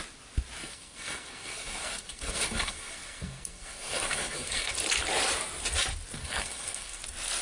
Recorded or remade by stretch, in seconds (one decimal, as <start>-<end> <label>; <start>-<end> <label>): 0.0-0.6 recorded; 0.6-4.7 remade; 4.7-6.2 recorded; 6.2-7.0 remade; 7.0-7.4 recorded